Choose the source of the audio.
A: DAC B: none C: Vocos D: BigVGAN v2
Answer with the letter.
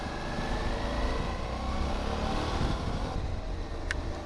B